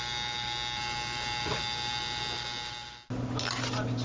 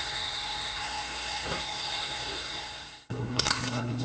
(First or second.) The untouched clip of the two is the first